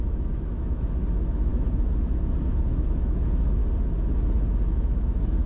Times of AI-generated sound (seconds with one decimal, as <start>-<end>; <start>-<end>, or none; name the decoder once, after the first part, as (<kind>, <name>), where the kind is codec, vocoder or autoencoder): 0.0-3.6 (autoencoder, DAC-VAE); 4.7-5.5